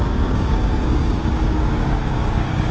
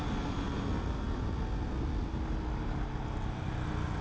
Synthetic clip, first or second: first